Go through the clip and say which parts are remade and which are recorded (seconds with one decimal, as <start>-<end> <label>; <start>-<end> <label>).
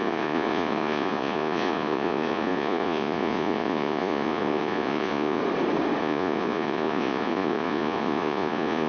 0.0-5.4 remade; 5.4-6.0 recorded; 6.0-8.9 remade